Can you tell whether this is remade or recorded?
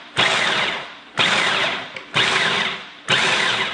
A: recorded